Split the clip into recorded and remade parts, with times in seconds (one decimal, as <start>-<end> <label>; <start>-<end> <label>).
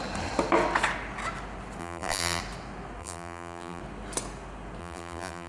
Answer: 0.0-1.8 recorded; 1.8-2.4 remade; 2.4-3.0 recorded; 3.0-3.8 remade; 3.8-4.8 recorded; 4.8-5.5 remade